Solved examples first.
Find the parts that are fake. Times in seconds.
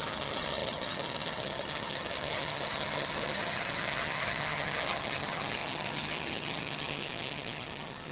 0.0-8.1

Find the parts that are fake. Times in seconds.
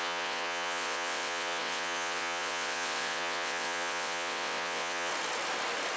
0.0-5.1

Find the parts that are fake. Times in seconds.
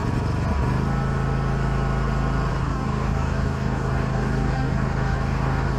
2.5-5.8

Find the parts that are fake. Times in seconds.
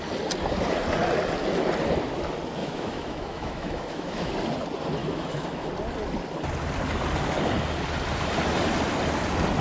2.6-4.3; 5.0-5.7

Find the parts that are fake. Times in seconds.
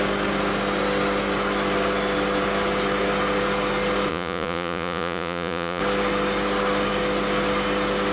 4.1-5.8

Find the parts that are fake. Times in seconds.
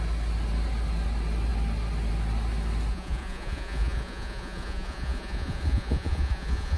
2.9-6.8